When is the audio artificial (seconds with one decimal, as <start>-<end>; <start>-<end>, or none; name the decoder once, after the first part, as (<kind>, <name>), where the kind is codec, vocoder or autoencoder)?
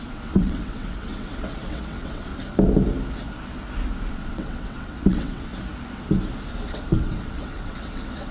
0.0-2.3 (vocoder, WaveNeXt); 4.1-5.5; 6.7-8.3